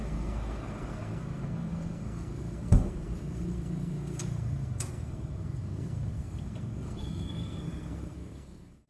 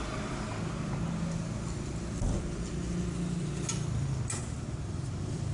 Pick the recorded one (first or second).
second